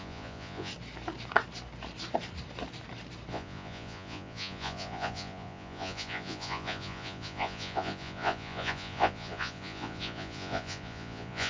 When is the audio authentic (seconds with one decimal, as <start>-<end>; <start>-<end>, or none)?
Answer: 0.7-3.3

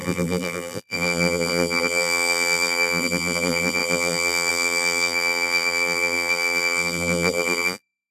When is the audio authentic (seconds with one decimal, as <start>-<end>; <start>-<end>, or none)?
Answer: none